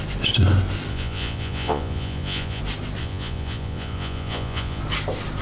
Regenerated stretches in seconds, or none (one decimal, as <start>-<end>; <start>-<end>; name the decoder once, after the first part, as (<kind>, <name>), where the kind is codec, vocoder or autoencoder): 0.9-2.6 (vocoder, Vocos); 3.0-4.8